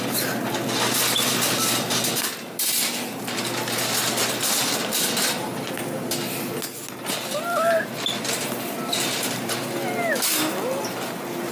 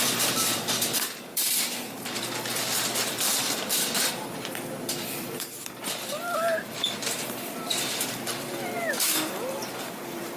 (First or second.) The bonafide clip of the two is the first